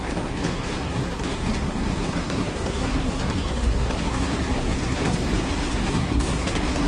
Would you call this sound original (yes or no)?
no